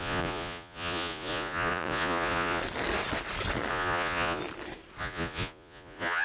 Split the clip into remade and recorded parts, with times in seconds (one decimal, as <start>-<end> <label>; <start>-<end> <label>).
0.0-2.6 remade; 2.6-3.7 recorded; 3.7-4.4 remade; 4.4-5.0 recorded; 5.0-6.2 remade